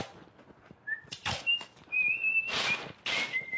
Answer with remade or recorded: recorded